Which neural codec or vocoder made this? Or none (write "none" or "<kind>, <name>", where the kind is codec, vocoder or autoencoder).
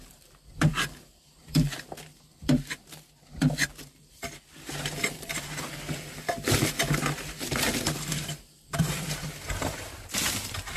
vocoder, BigVGAN v2